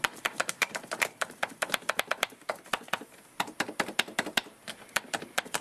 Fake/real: fake